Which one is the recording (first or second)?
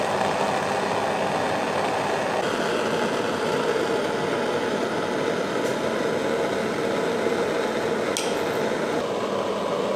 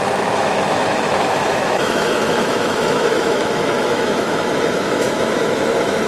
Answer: first